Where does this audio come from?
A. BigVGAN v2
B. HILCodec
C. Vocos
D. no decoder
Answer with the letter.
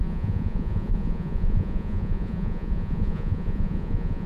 C